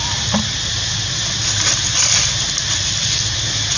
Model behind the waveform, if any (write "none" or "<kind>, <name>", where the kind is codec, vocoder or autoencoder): none